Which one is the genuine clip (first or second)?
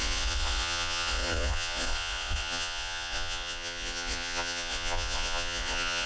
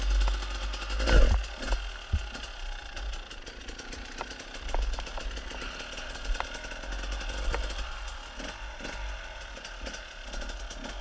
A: second